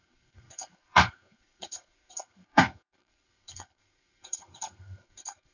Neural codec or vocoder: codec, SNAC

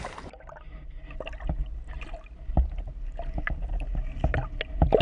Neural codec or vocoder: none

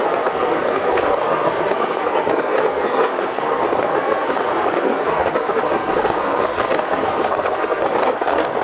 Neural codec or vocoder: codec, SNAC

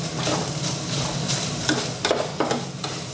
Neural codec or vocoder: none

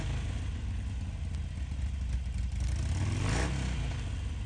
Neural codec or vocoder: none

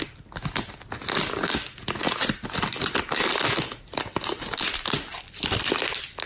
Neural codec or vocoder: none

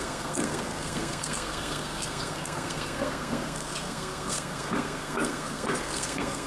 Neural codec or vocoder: codec, SNAC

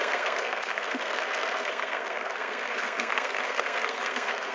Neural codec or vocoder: codec, SNAC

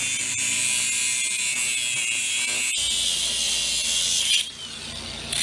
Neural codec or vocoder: none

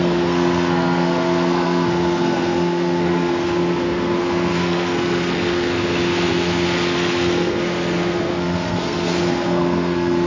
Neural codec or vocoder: codec, SNAC